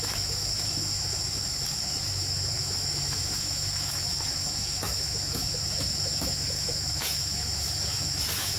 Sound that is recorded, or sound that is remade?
remade